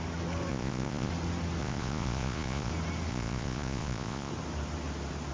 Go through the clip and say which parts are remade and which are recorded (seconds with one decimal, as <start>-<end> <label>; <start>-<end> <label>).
0.0-0.5 recorded; 0.5-1.1 remade; 1.1-1.6 recorded; 1.6-2.7 remade; 2.7-3.1 recorded; 3.1-4.3 remade; 4.3-5.3 recorded